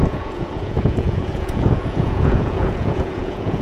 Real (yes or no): no